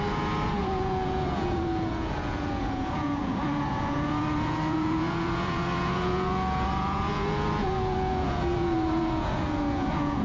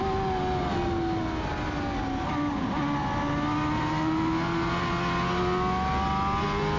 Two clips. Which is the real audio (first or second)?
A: second